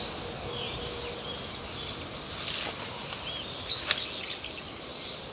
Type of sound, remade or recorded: recorded